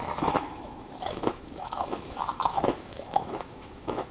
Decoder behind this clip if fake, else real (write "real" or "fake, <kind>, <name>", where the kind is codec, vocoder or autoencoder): fake, autoencoder, DAC-VAE